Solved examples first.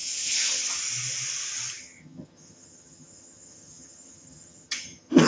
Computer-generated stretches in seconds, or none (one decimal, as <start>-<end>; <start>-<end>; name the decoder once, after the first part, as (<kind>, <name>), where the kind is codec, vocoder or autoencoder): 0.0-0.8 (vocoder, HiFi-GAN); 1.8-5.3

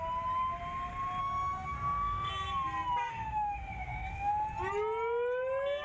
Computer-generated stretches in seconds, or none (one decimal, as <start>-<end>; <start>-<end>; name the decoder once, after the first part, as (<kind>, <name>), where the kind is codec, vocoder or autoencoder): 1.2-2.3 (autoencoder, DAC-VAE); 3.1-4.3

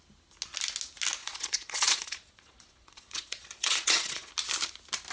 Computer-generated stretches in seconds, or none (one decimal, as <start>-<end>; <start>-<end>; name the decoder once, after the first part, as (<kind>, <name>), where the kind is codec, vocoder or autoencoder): 1.2-4.3 (vocoder, Vocos)

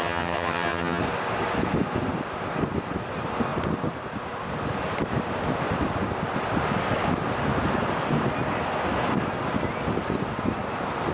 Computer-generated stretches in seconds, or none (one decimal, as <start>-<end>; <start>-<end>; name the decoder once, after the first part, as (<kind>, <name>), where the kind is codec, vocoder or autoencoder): 0.0-1.0 (vocoder, HiFi-GAN)